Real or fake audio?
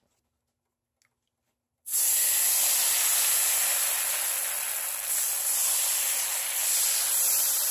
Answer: real